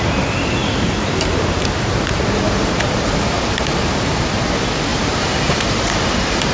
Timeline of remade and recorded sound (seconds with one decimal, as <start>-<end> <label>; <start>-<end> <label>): 0.0-0.6 recorded; 0.6-4.3 remade; 4.3-4.9 recorded; 4.9-5.8 remade; 5.8-6.5 recorded